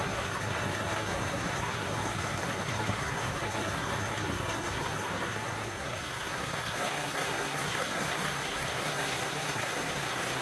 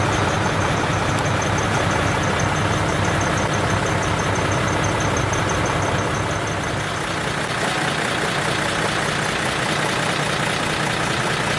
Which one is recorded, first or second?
second